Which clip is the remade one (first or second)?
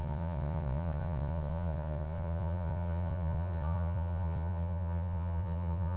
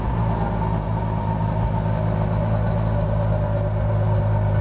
first